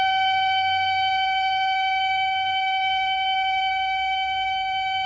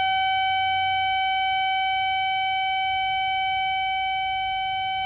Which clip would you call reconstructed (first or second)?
first